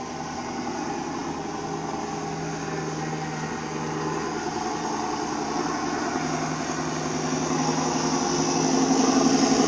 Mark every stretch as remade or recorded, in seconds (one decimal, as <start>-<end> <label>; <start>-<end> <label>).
0.0-9.7 recorded